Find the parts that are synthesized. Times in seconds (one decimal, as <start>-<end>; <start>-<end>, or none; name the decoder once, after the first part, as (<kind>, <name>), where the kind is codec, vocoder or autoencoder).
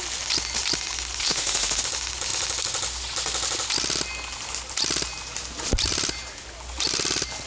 1.2-1.8 (autoencoder, DAC-VAE)